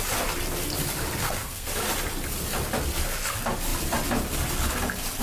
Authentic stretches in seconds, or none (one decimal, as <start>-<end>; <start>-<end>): 0.0-1.2; 1.7-5.2